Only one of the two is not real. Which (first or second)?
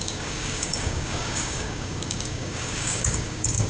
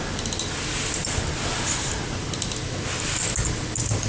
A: first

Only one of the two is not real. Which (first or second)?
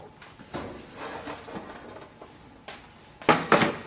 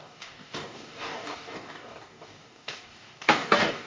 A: second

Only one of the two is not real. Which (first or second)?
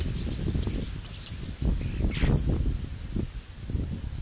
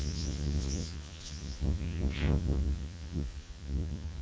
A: second